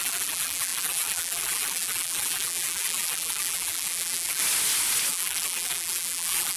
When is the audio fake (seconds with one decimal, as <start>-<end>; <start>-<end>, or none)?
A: 0.0-4.4; 5.1-6.6